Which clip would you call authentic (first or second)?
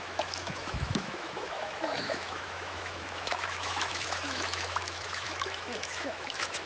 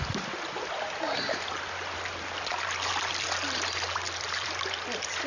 second